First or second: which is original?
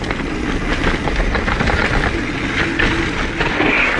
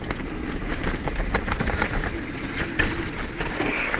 first